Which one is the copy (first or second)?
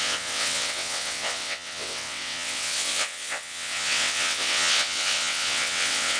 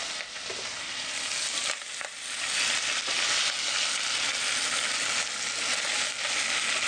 first